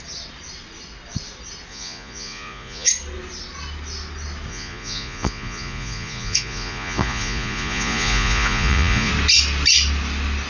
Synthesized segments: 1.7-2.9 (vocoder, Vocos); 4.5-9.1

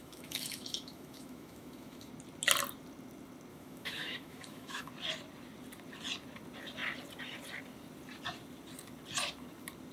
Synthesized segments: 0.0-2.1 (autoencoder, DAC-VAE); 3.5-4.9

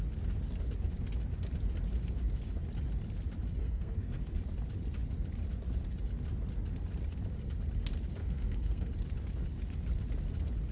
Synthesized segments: 3.6-4.2 (codec, SNAC); 8.2-8.9

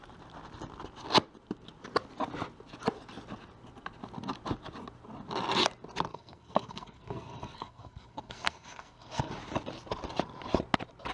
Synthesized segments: 6.1-9.3 (codec, SNAC)